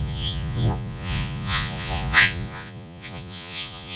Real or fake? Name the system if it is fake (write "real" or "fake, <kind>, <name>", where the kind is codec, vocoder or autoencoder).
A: fake, vocoder, Vocos